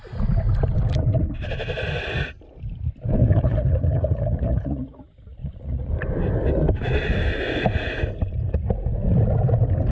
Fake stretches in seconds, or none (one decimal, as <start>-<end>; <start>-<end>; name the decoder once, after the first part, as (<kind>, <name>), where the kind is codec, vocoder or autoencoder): 3.2-5.0 (vocoder, Vocos); 5.4-5.9